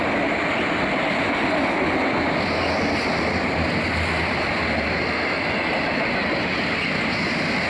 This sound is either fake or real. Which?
real